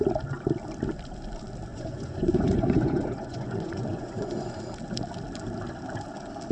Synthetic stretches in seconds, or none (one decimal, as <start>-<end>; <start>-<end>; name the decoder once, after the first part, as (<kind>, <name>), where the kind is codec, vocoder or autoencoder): 1.7-4.6 (vocoder, Vocos)